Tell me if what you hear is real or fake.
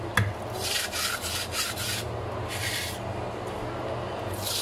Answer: real